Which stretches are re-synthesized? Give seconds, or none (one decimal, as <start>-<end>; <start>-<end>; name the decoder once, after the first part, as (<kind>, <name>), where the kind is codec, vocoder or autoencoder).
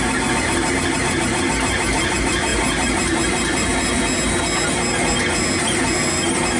none